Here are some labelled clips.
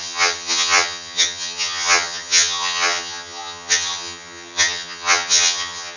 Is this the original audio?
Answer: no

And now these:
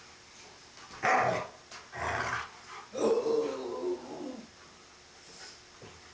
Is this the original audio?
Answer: yes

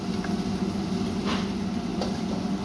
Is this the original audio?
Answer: yes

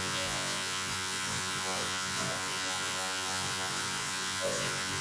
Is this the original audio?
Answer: no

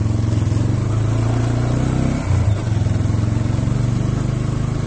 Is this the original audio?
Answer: yes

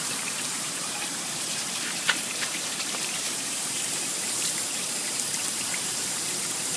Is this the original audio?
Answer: no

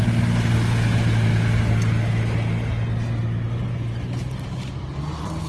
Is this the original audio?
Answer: yes